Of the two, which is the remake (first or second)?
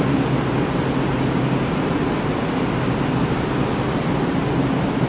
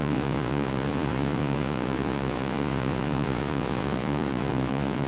second